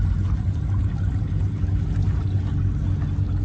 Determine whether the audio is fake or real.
real